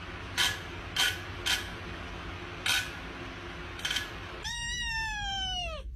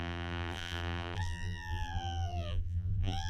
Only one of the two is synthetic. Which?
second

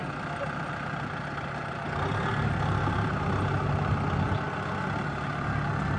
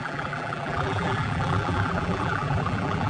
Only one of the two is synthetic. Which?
second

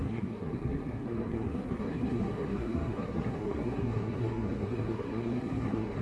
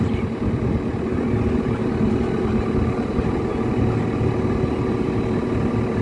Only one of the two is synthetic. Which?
first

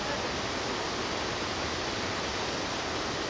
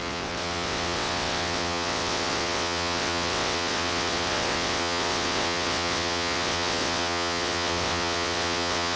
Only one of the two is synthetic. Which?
second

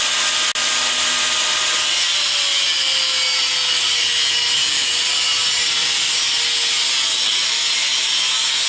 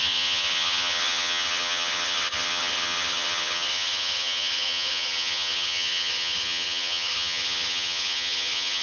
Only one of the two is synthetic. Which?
second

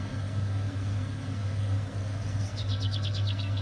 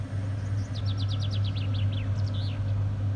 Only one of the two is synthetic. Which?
first